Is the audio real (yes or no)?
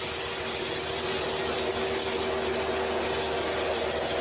yes